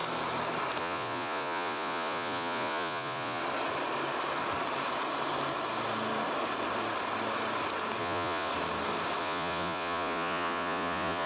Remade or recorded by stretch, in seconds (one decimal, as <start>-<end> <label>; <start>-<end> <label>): 0.0-0.8 recorded; 0.8-3.4 remade; 3.4-8.0 recorded; 8.0-8.5 remade; 8.5-9.2 recorded; 9.2-11.3 remade